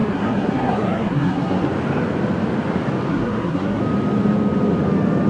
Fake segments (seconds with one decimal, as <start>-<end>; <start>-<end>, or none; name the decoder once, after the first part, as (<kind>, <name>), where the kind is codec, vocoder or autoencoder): 0.0-1.7 (codec, SNAC); 3.1-3.8

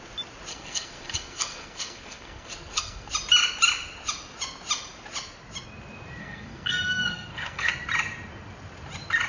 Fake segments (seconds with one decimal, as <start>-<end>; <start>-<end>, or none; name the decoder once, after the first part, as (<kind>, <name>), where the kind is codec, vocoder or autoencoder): 0.5-3.1 (codec, SNAC); 6.2-7.7